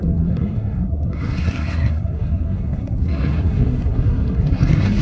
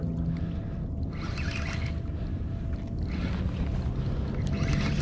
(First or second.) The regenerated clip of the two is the first